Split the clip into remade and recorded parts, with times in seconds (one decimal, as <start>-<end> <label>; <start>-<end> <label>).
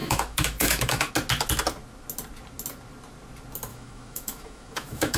0.0-1.1 remade; 1.1-3.7 recorded; 3.7-5.2 remade